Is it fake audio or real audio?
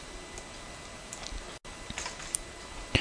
real